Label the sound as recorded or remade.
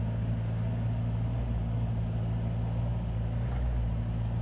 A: recorded